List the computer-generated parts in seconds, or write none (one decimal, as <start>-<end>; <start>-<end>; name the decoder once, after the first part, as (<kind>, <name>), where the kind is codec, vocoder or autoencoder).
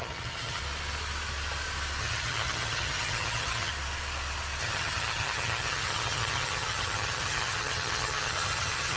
0.0-0.6 (vocoder, HiFi-GAN); 2.0-3.7; 4.6-9.0